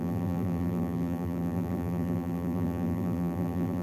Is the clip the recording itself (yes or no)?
no